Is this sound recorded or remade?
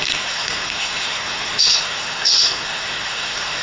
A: remade